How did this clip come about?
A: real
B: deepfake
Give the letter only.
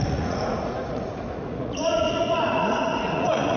B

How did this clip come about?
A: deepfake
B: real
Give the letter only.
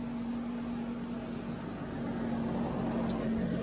B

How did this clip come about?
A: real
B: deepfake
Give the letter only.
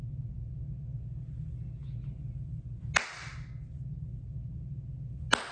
A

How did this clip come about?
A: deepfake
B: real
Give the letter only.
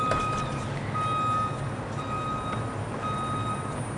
B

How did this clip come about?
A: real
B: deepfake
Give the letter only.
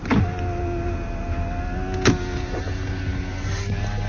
A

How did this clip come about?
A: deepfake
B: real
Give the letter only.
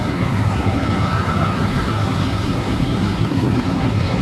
A